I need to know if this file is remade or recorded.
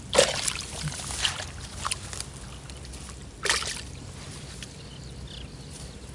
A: recorded